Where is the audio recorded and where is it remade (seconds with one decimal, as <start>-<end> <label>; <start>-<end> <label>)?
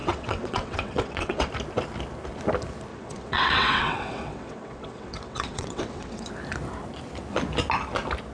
0.0-1.5 remade; 1.5-2.9 recorded; 2.9-6.3 remade; 6.3-8.3 recorded